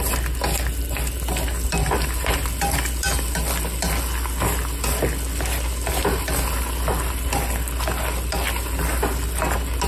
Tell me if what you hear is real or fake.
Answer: real